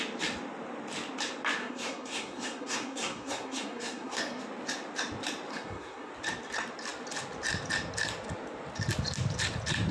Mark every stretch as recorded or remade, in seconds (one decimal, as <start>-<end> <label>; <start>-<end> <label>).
0.0-1.6 recorded; 1.6-4.4 remade; 4.4-5.5 recorded; 5.5-6.1 remade; 6.1-9.9 recorded